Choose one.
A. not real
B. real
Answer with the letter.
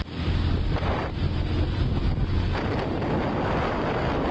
B